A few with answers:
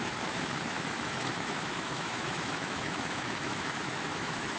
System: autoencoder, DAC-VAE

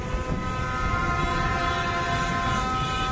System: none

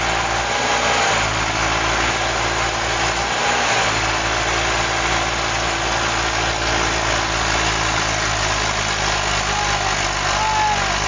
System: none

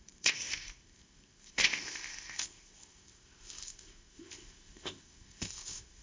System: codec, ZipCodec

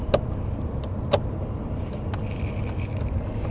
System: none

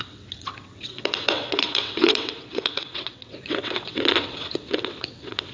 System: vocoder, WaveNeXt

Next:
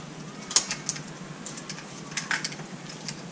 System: none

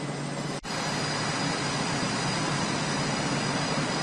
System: none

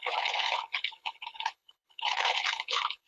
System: codec, HILCodec